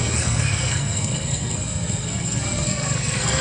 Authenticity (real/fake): fake